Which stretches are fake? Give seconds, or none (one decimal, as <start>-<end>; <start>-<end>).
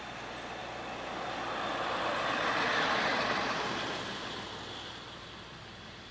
3.1-6.1